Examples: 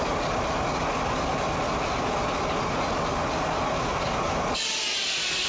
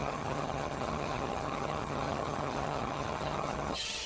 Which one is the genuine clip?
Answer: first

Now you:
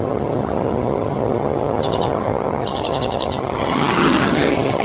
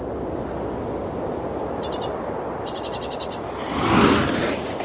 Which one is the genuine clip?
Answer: second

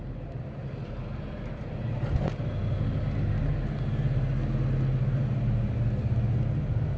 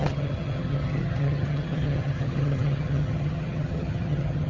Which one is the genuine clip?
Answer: first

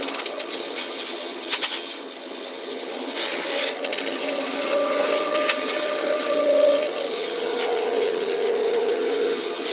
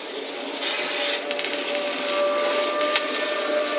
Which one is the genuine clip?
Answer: second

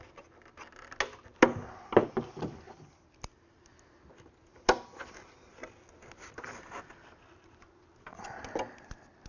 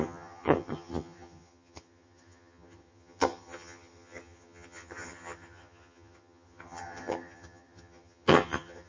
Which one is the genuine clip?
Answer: first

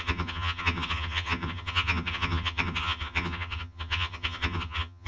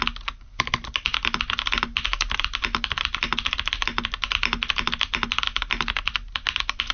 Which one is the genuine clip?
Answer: second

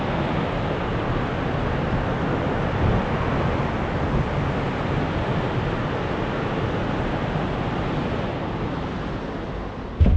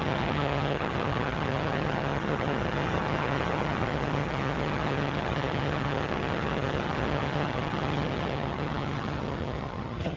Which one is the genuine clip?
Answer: first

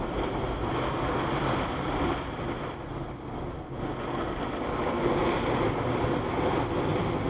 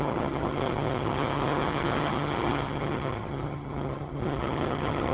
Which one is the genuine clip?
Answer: first